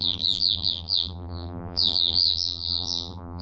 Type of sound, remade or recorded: remade